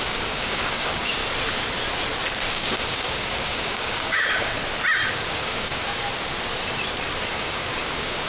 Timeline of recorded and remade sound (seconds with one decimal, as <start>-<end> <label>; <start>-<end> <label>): 0.0-1.2 remade; 1.2-2.5 recorded; 2.5-4.5 remade; 4.5-5.1 recorded; 5.1-6.0 remade; 6.0-7.3 recorded; 7.3-8.3 remade